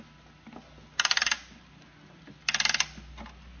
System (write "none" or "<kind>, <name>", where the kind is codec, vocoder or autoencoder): none